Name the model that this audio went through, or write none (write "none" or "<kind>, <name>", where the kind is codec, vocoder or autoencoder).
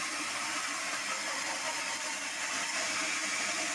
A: vocoder, BigVGAN v2